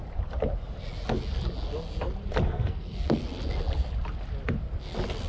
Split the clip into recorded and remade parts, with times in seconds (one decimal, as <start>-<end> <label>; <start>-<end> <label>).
0.0-2.4 recorded; 2.4-3.2 remade; 3.2-5.3 recorded